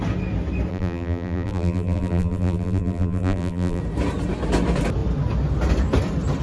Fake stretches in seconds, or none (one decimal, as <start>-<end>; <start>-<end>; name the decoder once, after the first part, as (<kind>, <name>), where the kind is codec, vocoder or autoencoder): 0.7-3.8 (vocoder, BigVGAN v2)